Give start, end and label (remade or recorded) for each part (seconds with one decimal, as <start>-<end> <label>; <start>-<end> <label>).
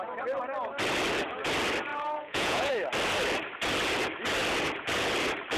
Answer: 0.0-1.9 recorded; 1.9-2.7 remade; 2.7-5.6 recorded